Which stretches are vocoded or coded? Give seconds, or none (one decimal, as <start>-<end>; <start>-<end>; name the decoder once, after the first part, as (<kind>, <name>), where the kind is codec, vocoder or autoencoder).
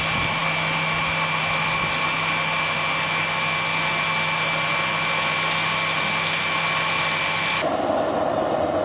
none